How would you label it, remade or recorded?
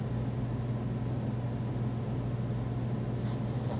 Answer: recorded